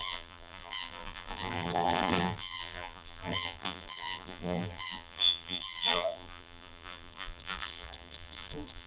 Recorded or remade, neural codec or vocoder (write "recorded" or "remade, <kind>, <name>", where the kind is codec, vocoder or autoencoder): remade, vocoder, BigVGAN v2